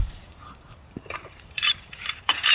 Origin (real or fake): fake